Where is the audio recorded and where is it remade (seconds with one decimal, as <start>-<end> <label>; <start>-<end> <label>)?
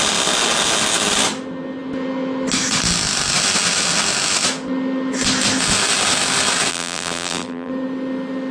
0.0-6.7 recorded; 6.7-7.7 remade; 7.7-8.5 recorded